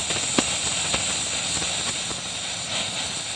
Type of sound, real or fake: real